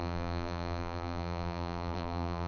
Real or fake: fake